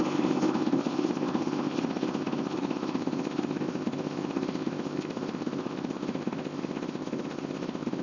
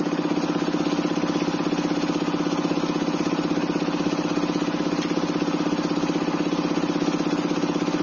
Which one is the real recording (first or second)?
second